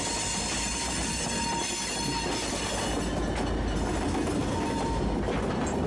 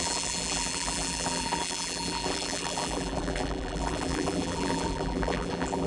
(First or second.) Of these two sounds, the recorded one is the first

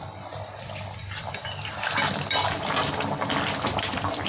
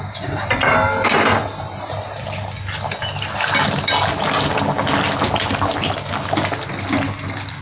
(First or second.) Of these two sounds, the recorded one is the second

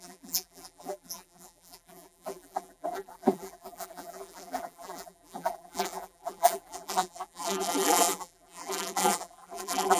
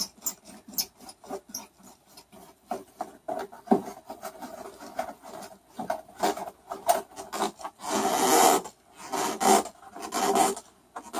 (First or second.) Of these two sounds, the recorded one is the second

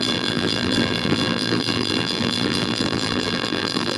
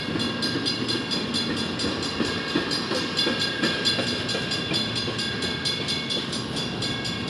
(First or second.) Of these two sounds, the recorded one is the second